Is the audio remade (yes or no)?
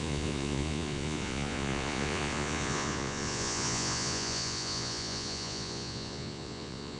yes